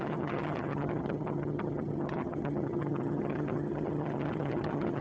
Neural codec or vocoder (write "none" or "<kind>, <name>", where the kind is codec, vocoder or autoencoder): vocoder, HiFi-GAN